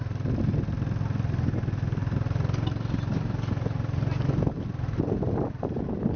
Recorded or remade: recorded